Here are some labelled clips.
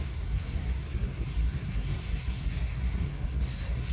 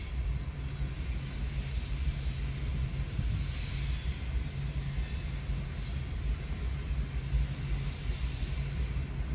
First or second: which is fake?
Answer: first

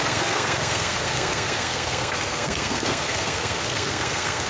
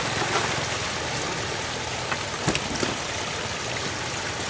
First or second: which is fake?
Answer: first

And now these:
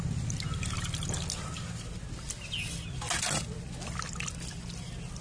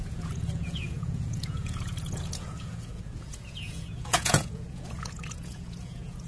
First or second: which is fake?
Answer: second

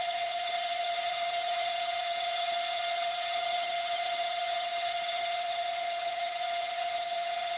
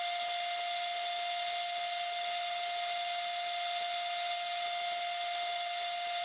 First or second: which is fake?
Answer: first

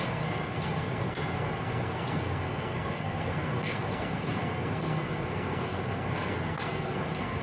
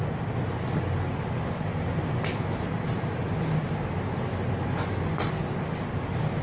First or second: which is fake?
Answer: first